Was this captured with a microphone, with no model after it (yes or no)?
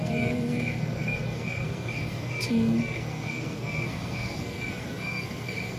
no